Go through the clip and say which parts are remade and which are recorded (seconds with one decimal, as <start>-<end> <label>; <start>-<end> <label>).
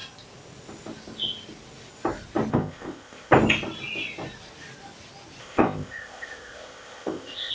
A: 0.0-2.5 recorded; 2.5-3.3 remade; 3.3-5.4 recorded; 5.4-7.5 remade